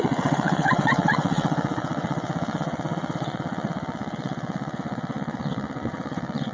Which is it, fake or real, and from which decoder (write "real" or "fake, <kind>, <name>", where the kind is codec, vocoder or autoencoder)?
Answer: fake, vocoder, WaveNeXt